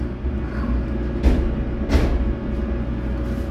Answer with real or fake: real